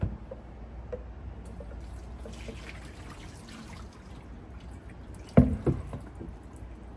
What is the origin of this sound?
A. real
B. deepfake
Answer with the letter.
A